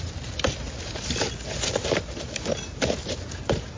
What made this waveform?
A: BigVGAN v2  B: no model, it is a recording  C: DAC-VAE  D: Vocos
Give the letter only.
B